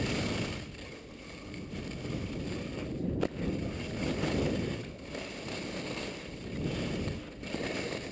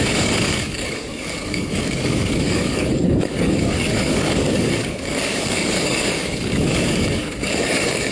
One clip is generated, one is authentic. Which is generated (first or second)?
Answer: second